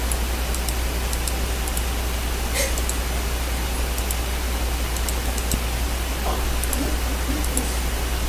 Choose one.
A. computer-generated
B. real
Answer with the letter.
B